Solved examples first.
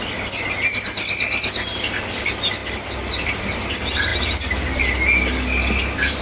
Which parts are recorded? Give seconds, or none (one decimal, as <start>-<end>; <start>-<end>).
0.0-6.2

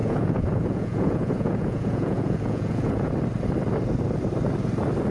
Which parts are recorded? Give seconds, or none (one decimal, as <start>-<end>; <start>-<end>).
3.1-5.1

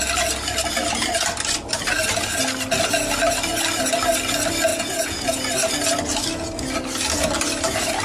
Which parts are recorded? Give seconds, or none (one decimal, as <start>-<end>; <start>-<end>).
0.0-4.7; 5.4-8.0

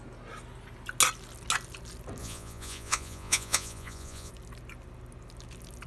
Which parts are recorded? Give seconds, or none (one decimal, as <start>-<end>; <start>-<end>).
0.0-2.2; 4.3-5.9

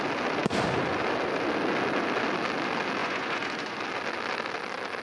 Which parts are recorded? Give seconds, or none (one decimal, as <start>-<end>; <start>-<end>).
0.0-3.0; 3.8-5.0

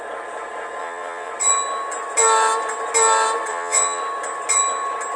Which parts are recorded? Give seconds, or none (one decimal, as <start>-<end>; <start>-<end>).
0.0-0.8; 1.3-3.5; 4.0-5.2